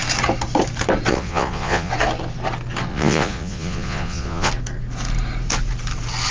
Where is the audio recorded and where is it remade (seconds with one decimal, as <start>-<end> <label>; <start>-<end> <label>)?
0.0-1.1 recorded; 1.1-1.9 remade; 1.9-2.9 recorded; 2.9-4.5 remade; 4.5-6.3 recorded